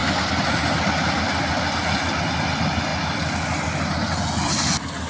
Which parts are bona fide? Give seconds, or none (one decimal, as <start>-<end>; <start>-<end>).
0.0-5.1